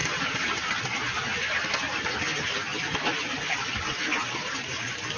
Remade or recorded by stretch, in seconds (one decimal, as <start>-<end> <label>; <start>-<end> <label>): 0.0-0.7 remade; 0.7-5.2 recorded

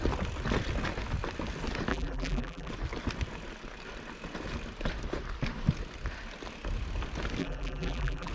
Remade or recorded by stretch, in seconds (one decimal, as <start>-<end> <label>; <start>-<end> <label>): 0.0-1.9 recorded; 1.9-2.7 remade; 2.7-7.4 recorded; 7.4-8.3 remade

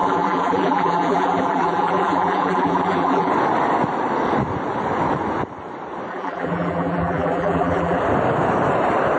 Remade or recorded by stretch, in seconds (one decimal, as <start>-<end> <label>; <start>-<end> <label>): 0.0-3.3 remade; 3.3-6.1 recorded; 6.1-8.0 remade; 8.0-9.2 recorded

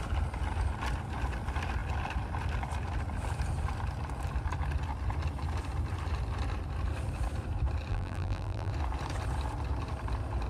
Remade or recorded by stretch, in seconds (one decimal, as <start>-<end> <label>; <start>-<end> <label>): 0.0-7.9 recorded; 7.9-8.7 remade; 8.7-10.5 recorded

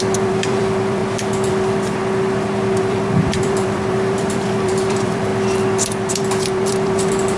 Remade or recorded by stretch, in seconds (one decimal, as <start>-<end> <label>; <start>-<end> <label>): 0.0-1.0 remade; 1.0-1.5 recorded; 1.5-2.0 remade; 2.0-2.8 recorded; 2.8-5.3 remade; 5.3-6.1 recorded; 6.1-7.4 remade